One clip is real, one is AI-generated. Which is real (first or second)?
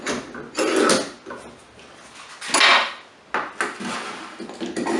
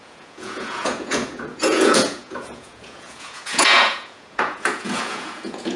first